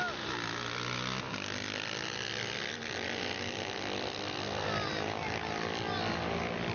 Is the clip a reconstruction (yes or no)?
no